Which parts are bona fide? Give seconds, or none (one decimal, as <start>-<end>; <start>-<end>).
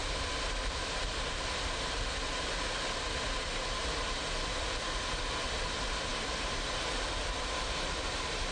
0.0-8.5